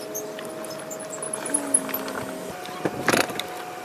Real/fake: real